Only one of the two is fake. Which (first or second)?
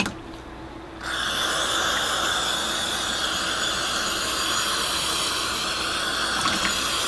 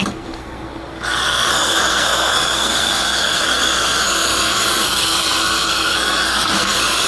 second